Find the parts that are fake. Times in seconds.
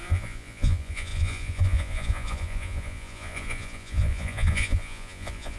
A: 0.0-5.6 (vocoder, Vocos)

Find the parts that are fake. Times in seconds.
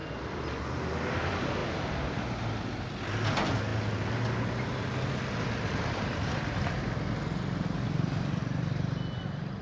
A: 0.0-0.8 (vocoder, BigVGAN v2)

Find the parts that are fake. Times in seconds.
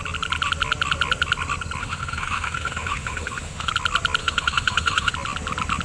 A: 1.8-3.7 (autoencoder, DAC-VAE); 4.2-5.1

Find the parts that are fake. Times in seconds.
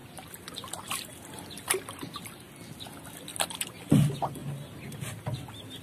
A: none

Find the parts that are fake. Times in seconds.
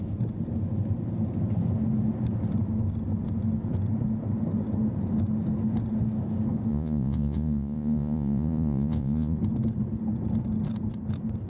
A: 6.7-9.4 (vocoder, Vocos)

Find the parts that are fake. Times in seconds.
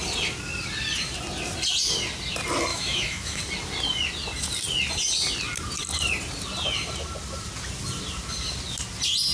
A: 2.7-3.4 (autoencoder, DAC-VAE)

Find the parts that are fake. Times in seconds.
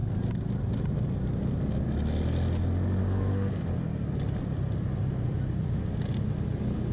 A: 3.0-3.6 (codec, SNAC)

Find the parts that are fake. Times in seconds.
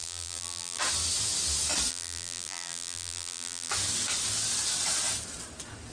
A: 0.0-0.8 (vocoder, BigVGAN v2); 1.9-3.7